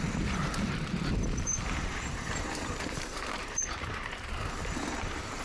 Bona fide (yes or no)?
no